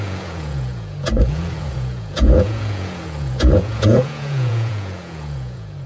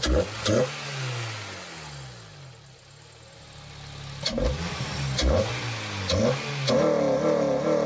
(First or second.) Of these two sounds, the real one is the second